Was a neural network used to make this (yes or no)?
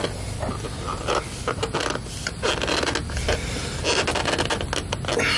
no